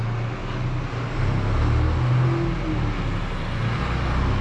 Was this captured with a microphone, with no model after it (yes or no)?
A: yes